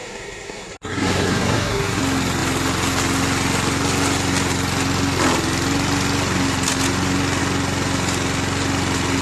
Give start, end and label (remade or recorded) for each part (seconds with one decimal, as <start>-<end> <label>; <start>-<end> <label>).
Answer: 0.0-2.0 remade; 2.0-9.2 recorded